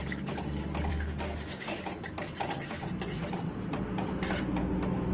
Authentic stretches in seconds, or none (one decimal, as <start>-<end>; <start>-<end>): 0.0-0.9; 1.8-5.1